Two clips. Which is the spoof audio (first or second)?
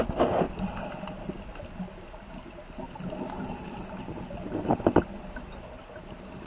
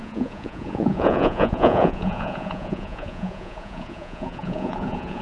second